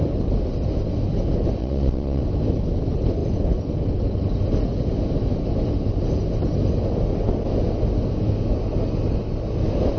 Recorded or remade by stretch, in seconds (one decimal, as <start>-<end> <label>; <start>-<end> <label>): 0.0-1.6 recorded; 1.6-2.2 remade; 2.2-10.0 recorded